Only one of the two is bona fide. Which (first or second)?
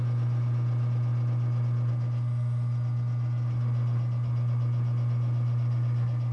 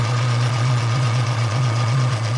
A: first